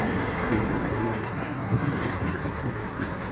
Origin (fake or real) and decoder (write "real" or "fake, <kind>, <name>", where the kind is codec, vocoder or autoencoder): fake, codec, SNAC